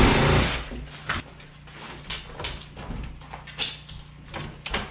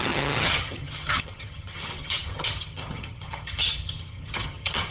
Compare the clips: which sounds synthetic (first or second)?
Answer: second